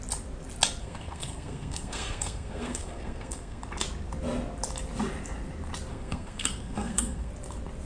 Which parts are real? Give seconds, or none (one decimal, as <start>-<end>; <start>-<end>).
0.0-0.8; 3.6-5.9; 7.3-7.9